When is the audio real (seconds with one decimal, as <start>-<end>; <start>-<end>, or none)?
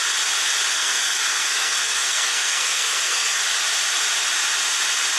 0.0-0.7; 3.4-5.2